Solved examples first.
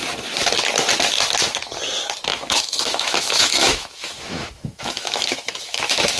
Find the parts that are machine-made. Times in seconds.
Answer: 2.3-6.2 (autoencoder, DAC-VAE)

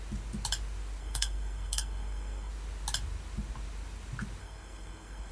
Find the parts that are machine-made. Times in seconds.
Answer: 1.0-2.5 (codec, SNAC); 4.4-5.3